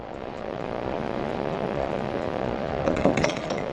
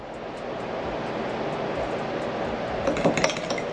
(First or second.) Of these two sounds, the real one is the second